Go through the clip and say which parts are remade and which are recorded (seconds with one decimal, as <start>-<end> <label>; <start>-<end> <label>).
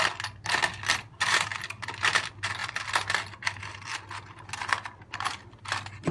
0.0-6.1 recorded